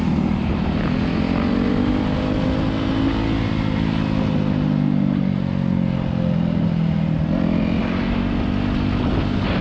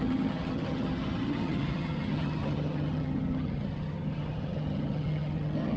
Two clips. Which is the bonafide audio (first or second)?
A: first